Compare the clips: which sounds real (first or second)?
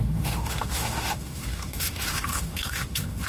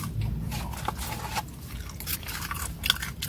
second